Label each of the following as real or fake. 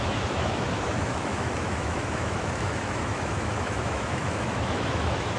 fake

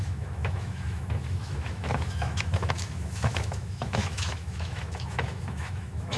fake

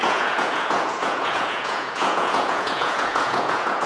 fake